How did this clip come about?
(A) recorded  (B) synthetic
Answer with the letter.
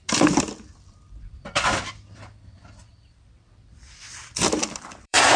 B